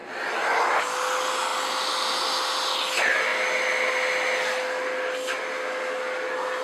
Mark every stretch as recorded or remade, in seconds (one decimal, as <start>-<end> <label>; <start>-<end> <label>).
0.0-6.6 recorded